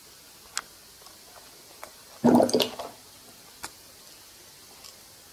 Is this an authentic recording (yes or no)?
yes